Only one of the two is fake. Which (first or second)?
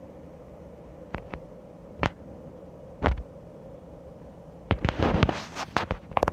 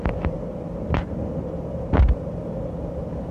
first